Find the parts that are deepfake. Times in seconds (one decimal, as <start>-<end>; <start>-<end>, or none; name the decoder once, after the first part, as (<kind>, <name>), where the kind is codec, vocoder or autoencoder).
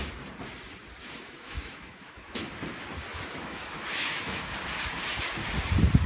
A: 1.0-2.5 (autoencoder, DAC-VAE); 3.1-4.5